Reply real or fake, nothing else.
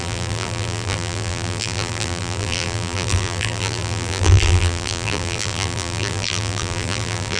fake